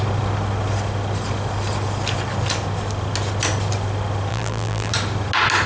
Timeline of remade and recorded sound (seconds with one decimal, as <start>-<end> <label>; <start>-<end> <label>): 0.0-4.3 recorded; 4.3-4.9 remade; 4.9-5.7 recorded

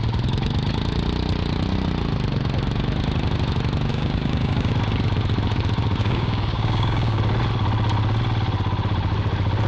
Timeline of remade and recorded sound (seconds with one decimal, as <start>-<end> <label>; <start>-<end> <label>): 0.0-3.9 recorded; 3.9-4.7 remade; 4.7-6.0 recorded; 6.0-7.2 remade; 7.2-9.7 recorded